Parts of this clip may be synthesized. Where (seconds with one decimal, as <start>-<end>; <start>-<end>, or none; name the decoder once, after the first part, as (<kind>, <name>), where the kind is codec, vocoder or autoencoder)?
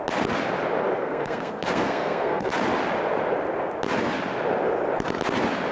1.0-2.5 (codec, SNAC)